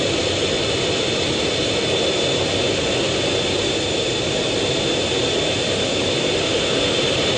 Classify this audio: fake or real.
fake